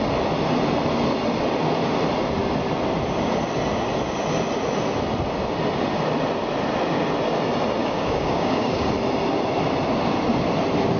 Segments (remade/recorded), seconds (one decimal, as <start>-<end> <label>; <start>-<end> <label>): 0.0-7.8 recorded; 7.8-8.9 remade; 8.9-11.0 recorded